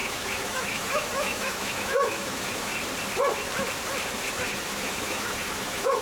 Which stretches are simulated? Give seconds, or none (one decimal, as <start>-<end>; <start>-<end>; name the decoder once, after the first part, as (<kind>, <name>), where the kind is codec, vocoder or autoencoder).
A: 0.0-2.7 (autoencoder, DAC-VAE); 4.3-6.0